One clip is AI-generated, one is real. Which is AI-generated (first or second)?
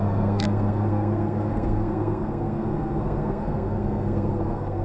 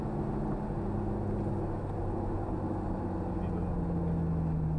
first